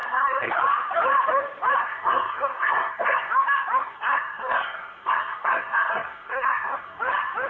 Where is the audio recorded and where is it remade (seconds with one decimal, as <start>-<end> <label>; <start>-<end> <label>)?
0.0-0.5 remade; 0.5-1.8 recorded; 1.8-3.3 remade; 3.3-3.8 recorded; 3.8-7.0 remade; 7.0-7.5 recorded